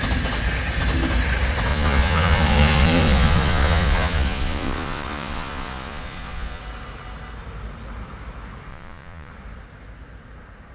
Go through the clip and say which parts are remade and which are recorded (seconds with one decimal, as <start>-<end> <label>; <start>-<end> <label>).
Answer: 0.0-1.7 recorded; 1.7-6.6 remade; 6.6-8.7 recorded; 8.7-9.3 remade; 9.3-10.7 recorded